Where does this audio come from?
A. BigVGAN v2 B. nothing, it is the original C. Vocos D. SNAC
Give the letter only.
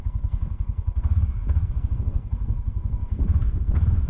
D